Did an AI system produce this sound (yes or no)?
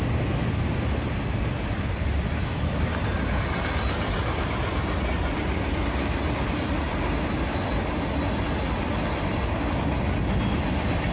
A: no